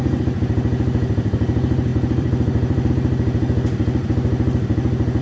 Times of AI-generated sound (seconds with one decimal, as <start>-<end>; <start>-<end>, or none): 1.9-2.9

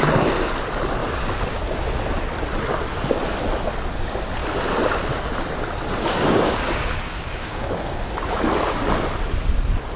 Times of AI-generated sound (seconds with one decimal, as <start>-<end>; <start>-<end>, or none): 6.0-7.8

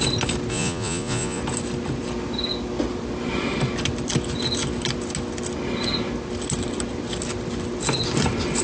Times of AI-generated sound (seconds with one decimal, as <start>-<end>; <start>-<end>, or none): 0.5-1.4

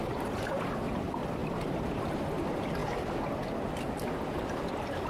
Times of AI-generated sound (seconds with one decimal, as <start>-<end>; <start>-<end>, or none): 0.0-0.9; 1.4-1.9